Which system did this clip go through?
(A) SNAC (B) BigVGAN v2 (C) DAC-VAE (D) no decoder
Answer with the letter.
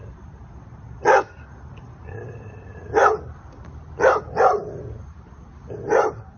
B